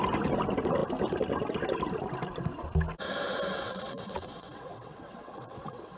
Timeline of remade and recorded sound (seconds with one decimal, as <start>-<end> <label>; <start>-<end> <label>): 0.0-3.5 recorded; 3.5-6.0 remade